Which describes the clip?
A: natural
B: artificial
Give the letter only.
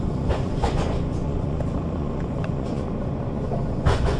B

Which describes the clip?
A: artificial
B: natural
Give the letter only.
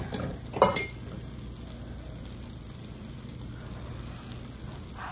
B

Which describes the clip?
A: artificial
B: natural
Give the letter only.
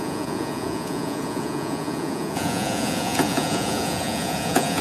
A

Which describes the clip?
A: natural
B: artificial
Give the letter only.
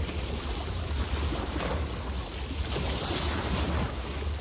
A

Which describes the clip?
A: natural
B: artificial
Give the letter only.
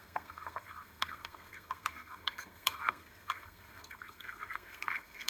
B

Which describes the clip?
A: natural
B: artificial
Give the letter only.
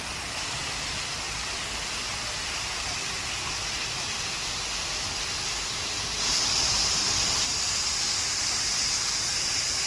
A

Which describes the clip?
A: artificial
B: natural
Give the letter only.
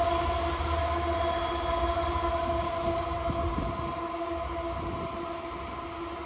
B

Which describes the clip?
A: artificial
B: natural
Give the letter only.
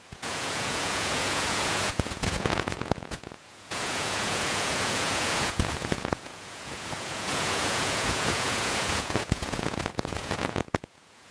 A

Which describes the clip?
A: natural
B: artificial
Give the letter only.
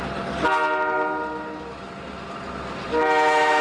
A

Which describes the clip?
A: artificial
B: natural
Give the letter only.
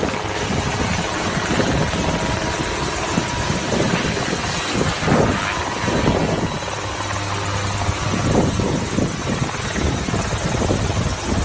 B